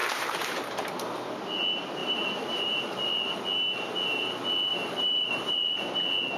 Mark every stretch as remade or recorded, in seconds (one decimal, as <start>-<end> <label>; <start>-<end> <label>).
0.0-0.8 remade; 0.8-2.0 recorded; 2.0-3.4 remade; 3.4-4.7 recorded; 4.7-5.8 remade; 5.8-6.4 recorded